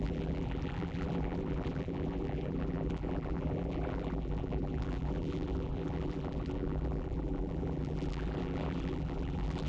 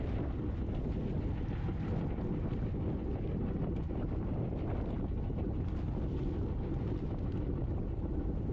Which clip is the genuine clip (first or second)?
second